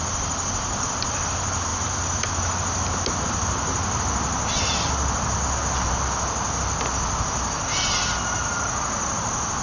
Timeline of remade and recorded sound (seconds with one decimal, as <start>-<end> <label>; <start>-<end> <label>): 0.0-9.6 recorded